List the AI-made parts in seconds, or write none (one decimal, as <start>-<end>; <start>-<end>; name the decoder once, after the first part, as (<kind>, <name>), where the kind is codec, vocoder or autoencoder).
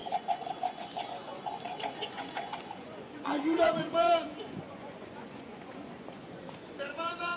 0.0-7.4 (vocoder, Vocos)